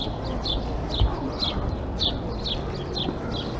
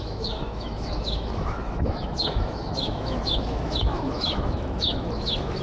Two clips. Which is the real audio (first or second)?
first